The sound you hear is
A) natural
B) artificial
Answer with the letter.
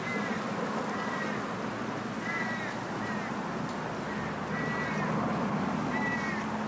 A